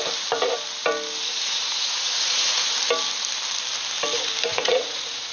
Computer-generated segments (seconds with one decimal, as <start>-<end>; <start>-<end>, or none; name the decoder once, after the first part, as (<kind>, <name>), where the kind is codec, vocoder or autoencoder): 1.3-2.8 (vocoder, Vocos); 4.5-5.3